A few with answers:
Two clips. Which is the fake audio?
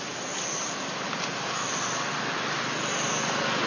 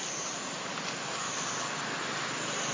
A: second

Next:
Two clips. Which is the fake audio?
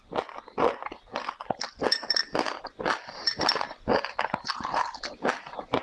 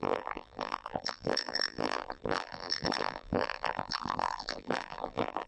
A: second